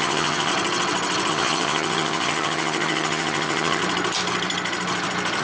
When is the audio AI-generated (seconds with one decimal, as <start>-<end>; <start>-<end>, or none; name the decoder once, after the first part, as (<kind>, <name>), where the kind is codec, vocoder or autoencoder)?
0.0-0.5 (vocoder, HiFi-GAN); 1.3-3.8

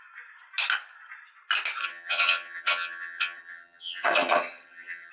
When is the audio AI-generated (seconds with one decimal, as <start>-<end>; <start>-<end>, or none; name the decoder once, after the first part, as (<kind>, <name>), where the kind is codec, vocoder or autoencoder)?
1.8-5.1 (vocoder, HiFi-GAN)

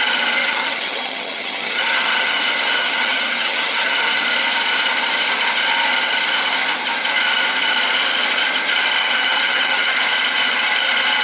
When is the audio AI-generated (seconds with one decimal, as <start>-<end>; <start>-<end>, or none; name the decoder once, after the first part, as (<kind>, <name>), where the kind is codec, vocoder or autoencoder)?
0.4-2.4 (vocoder, HiFi-GAN); 2.8-4.2; 9.0-10.0

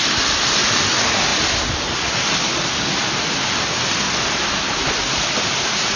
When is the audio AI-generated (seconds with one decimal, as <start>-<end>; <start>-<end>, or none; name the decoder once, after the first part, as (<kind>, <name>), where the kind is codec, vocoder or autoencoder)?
none

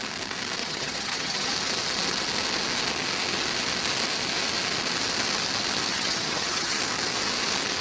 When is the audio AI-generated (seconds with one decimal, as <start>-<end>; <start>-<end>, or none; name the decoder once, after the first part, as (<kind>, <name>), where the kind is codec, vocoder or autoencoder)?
0.6-1.5 (vocoder, HiFi-GAN); 5.9-6.8